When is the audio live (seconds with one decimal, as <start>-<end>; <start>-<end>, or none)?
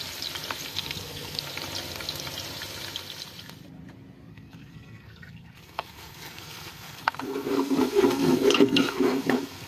0.0-0.7; 1.4-4.3